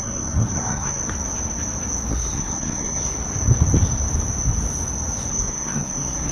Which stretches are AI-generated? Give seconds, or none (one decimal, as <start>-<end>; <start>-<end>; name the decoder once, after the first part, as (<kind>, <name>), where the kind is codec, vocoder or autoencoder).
0.0-1.0 (codec, SNAC); 2.1-3.1; 5.3-6.3